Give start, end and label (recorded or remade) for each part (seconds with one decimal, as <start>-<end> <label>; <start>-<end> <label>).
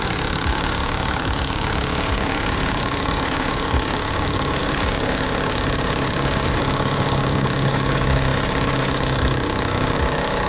0.0-10.5 remade